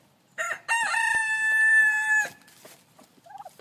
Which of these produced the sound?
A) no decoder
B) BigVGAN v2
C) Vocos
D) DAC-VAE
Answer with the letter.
B